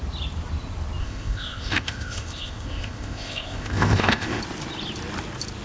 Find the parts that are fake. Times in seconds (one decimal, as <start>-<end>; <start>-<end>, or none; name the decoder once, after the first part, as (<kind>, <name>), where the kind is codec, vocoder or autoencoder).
1.0-4.4 (codec, ZipCodec)